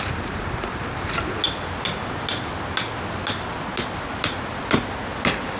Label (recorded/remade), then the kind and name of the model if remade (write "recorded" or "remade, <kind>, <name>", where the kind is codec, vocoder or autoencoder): recorded